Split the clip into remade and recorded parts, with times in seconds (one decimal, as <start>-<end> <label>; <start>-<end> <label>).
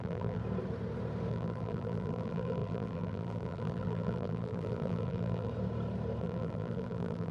0.0-0.4 remade; 0.4-1.3 recorded; 1.3-5.5 remade; 5.5-6.2 recorded; 6.2-7.3 remade